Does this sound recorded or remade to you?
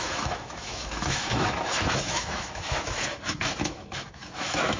remade